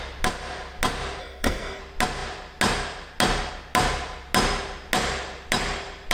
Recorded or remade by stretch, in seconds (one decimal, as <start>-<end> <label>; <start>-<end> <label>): 0.0-1.2 recorded; 1.2-1.8 remade; 1.8-6.1 recorded